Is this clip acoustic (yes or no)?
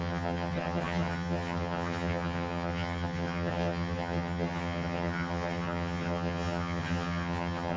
no